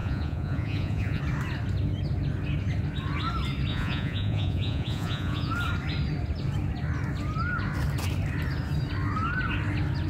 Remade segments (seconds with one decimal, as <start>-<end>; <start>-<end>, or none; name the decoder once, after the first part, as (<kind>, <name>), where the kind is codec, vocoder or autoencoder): 0.0-1.2 (vocoder, Vocos); 3.7-5.5